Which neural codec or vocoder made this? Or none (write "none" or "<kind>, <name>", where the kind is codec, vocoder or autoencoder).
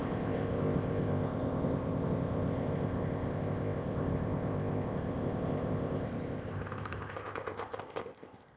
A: codec, ZipCodec